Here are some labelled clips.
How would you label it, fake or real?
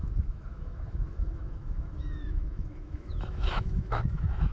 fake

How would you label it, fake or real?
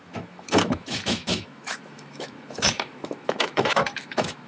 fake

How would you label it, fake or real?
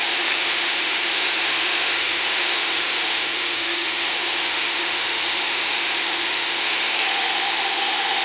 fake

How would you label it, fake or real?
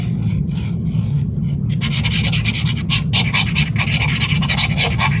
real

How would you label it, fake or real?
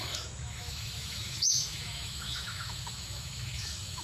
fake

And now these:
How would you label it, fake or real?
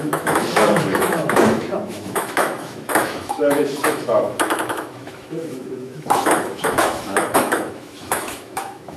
fake